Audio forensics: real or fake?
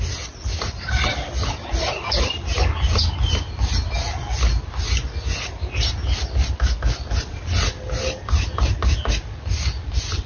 real